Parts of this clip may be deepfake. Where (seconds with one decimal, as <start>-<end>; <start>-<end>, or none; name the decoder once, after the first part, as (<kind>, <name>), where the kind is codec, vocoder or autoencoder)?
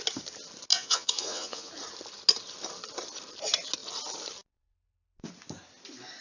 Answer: 0.7-1.7 (vocoder, Vocos)